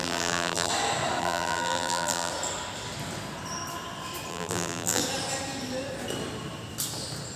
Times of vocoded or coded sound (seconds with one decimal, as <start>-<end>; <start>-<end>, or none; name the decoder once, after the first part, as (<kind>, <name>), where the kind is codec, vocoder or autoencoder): 0.0-0.7 (vocoder, BigVGAN v2); 1.2-2.3; 4.3-5.0